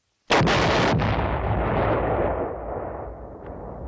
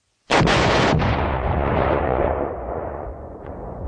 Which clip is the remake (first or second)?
second